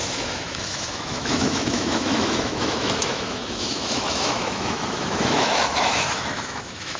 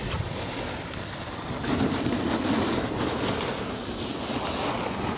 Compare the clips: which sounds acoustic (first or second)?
second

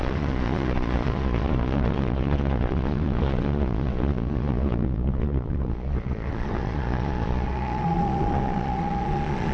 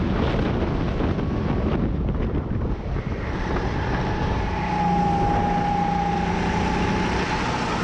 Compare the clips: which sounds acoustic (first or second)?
second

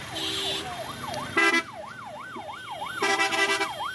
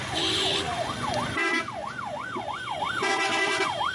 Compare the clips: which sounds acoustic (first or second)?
first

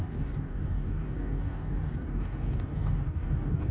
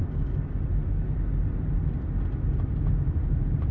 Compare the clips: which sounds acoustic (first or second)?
second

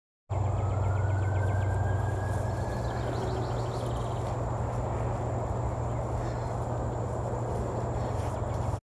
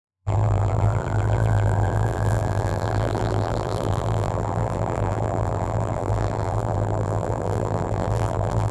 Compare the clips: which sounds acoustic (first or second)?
first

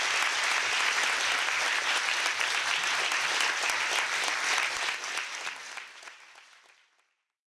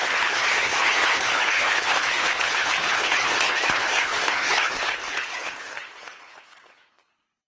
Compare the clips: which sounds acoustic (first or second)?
first